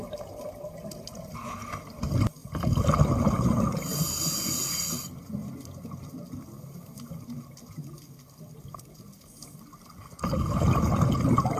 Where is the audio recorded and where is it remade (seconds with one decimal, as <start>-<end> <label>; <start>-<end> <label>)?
0.0-11.6 recorded